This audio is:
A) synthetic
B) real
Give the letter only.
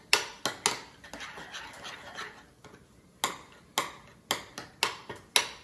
B